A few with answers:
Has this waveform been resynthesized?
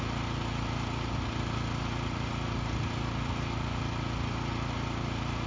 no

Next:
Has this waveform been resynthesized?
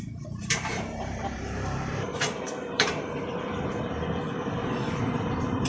yes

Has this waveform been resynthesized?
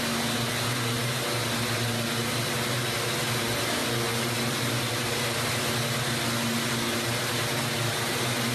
no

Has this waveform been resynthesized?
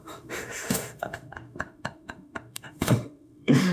yes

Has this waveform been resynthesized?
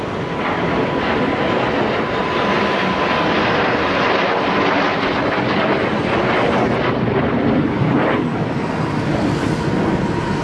no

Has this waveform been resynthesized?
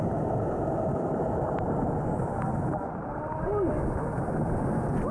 no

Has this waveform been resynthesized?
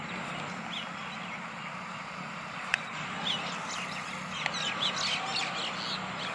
no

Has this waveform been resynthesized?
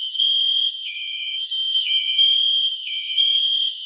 yes